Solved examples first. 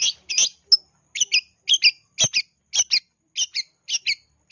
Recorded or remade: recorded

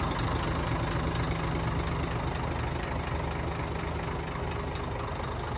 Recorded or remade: recorded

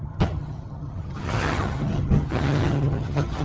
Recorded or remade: remade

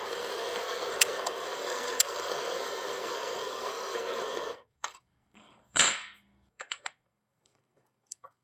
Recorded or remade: remade